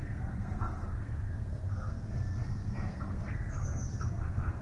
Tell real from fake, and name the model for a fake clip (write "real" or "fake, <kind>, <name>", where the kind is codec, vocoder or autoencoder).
fake, codec, SNAC